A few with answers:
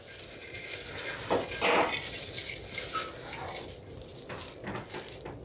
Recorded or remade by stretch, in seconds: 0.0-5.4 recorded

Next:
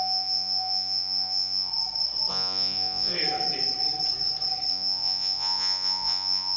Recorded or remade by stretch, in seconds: 0.0-1.7 remade; 1.7-2.3 recorded; 2.3-3.1 remade; 3.1-4.7 recorded; 4.7-6.6 remade